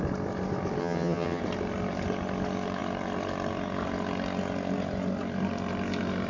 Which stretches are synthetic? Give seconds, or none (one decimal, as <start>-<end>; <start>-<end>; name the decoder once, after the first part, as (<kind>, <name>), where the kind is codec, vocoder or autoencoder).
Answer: 0.8-1.4 (vocoder, HiFi-GAN)